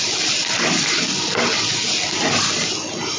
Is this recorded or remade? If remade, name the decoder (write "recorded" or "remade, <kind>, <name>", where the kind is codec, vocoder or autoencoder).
recorded